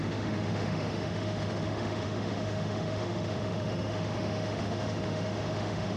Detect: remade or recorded remade